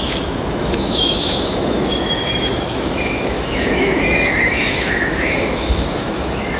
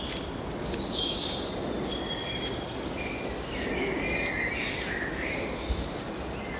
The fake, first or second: first